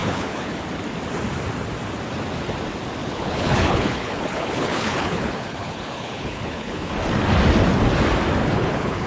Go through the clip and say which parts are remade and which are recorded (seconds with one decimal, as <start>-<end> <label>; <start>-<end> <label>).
0.0-0.6 remade; 0.6-3.0 recorded; 3.0-6.9 remade; 6.9-8.4 recorded; 8.4-9.1 remade